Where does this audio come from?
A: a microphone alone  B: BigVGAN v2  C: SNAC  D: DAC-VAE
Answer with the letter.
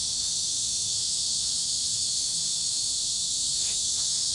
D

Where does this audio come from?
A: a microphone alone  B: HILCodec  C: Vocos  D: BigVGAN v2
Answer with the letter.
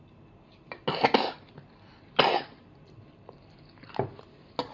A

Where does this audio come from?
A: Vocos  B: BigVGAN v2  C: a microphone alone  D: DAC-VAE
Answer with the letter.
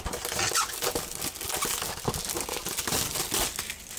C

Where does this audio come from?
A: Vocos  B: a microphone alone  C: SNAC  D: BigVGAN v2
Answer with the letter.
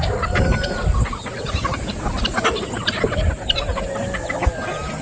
B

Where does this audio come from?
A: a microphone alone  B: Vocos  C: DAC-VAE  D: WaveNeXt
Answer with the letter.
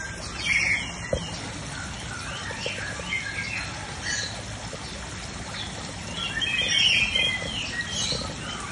A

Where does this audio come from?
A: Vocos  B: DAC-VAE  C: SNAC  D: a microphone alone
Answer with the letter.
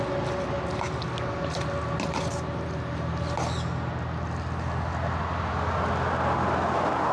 D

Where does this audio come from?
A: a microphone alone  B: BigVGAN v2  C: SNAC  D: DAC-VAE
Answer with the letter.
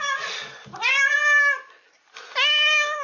A